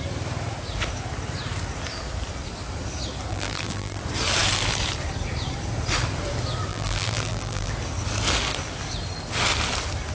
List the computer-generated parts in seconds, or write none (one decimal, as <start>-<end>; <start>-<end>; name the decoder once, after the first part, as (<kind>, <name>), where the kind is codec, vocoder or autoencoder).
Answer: 3.3-4.0 (vocoder, BigVGAN v2); 6.7-7.7